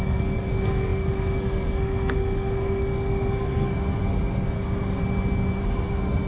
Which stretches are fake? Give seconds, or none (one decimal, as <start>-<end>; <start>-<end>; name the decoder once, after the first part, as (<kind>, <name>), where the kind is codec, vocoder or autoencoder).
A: 0.0-5.0 (codec, SNAC); 5.6-6.3